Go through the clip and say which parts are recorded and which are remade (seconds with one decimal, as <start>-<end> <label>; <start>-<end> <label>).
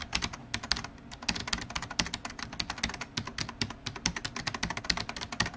0.0-5.6 recorded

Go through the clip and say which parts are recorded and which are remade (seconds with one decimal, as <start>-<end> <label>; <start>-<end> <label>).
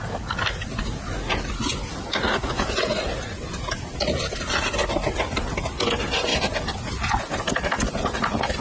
0.0-8.6 recorded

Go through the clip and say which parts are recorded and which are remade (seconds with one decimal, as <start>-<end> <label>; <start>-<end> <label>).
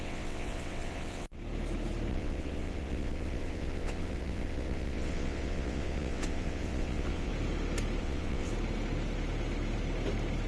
0.0-1.4 remade; 1.4-2.1 recorded; 2.1-7.3 remade; 7.3-8.0 recorded; 8.0-8.5 remade; 8.5-10.5 recorded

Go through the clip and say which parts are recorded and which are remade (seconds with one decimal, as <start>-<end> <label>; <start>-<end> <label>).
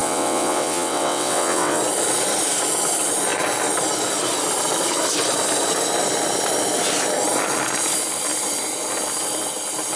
0.0-1.8 remade; 1.8-10.0 recorded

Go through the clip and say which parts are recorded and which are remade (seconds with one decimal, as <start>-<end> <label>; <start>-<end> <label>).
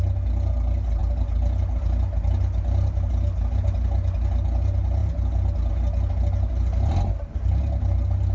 0.0-8.3 recorded